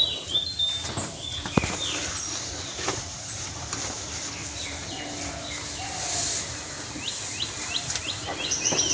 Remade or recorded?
recorded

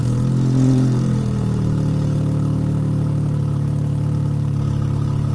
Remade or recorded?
remade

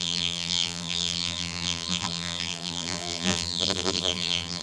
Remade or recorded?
remade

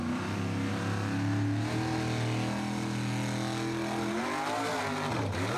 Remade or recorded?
recorded